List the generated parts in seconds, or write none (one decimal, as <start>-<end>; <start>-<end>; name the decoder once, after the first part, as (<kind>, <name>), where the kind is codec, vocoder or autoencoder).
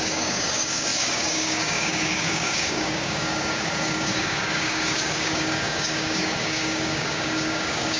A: 0.0-8.0 (codec, DAC)